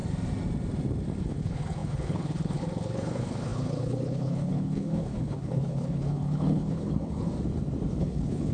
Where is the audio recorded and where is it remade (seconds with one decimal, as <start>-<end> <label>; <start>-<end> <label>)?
0.0-1.2 recorded; 1.2-7.3 remade; 7.3-8.0 recorded; 8.0-8.5 remade